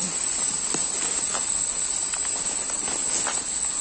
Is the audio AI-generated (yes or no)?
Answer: no